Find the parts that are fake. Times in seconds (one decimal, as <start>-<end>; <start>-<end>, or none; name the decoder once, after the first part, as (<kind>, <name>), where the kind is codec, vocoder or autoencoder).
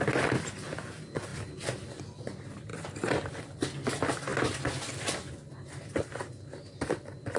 none